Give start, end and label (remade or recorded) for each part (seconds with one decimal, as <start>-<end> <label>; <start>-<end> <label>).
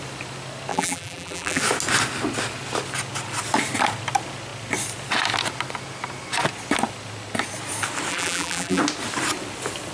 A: 0.0-0.7 recorded; 0.7-1.6 remade; 1.6-8.1 recorded; 8.1-8.8 remade; 8.8-9.9 recorded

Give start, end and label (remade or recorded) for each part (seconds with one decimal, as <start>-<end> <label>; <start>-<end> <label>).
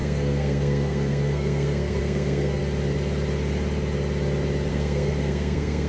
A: 0.0-2.6 remade; 2.6-4.7 recorded; 4.7-5.9 remade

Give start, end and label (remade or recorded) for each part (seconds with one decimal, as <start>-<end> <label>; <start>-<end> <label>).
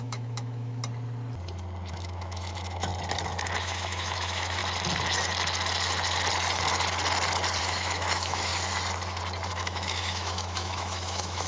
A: 0.0-0.8 remade; 0.8-1.9 recorded; 1.9-2.9 remade; 2.9-3.6 recorded; 3.6-4.6 remade; 4.6-7.6 recorded; 7.6-8.5 remade; 8.5-9.5 recorded; 9.5-11.5 remade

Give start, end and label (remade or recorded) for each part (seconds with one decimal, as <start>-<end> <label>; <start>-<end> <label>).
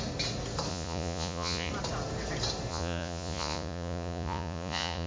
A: 0.0-0.7 recorded; 0.7-1.7 remade; 1.7-2.7 recorded; 2.7-5.1 remade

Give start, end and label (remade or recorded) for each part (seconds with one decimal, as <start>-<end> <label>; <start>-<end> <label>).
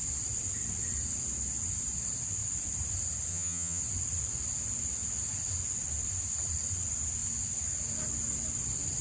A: 0.0-3.3 recorded; 3.3-3.8 remade; 3.8-9.0 recorded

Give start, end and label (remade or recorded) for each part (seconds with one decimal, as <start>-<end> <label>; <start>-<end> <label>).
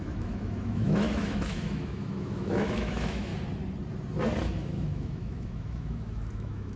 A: 0.0-3.3 remade; 3.3-4.4 recorded; 4.4-6.8 remade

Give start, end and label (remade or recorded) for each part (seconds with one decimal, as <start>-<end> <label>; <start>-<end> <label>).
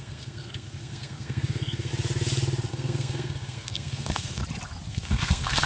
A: 0.0-1.9 remade; 1.9-2.7 recorded; 2.7-4.4 remade; 4.4-4.9 recorded; 4.9-5.7 remade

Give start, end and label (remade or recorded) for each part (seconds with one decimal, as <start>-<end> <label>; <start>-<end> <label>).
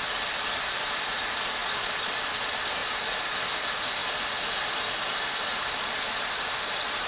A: 0.0-1.6 recorded; 1.6-2.3 remade; 2.3-4.0 recorded; 4.0-6.6 remade; 6.6-7.1 recorded